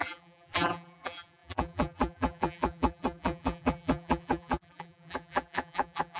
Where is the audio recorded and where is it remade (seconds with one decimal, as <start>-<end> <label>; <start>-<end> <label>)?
0.0-6.2 remade